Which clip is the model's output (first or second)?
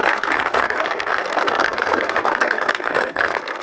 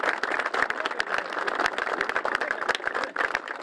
first